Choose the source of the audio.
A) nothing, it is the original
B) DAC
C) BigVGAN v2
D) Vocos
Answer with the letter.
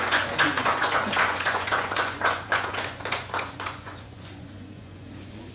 D